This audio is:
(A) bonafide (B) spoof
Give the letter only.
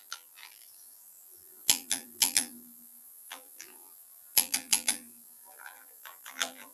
B